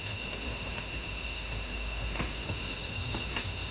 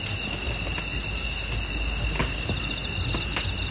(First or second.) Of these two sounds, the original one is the second